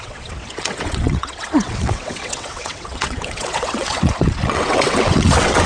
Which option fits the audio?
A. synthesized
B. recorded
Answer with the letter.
A